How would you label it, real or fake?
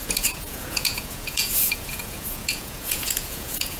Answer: fake